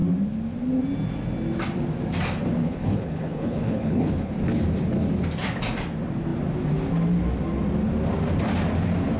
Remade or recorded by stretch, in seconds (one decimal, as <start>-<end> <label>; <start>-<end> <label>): 0.0-2.6 recorded; 2.6-4.3 remade; 4.3-9.2 recorded